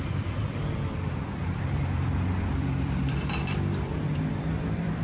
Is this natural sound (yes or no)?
no